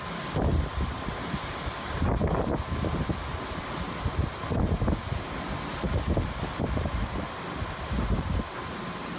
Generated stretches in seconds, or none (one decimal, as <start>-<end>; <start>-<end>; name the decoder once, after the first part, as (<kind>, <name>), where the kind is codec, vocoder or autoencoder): none